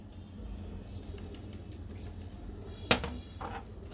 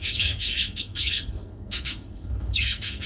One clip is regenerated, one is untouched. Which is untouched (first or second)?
first